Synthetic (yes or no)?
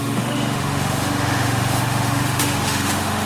yes